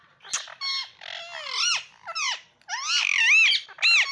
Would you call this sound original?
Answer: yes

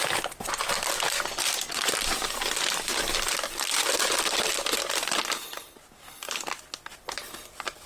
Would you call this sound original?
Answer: yes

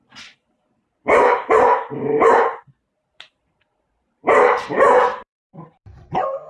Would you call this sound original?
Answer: no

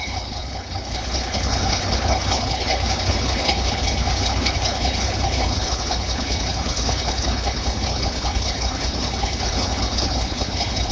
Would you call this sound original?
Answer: no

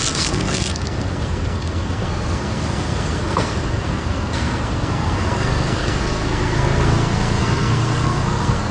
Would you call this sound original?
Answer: no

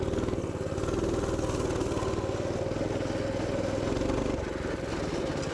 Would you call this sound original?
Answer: yes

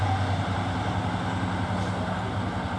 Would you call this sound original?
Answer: yes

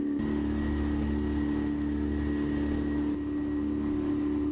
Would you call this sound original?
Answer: yes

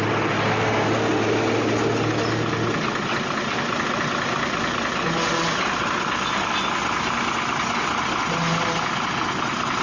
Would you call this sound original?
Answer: yes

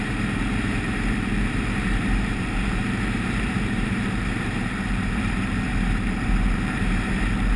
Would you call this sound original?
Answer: no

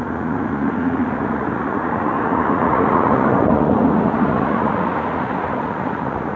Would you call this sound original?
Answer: no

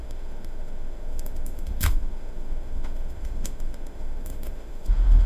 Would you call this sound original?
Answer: no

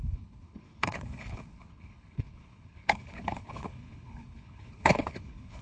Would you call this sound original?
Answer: no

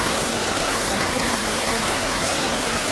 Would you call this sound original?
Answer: no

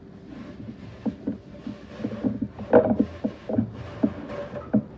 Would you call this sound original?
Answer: yes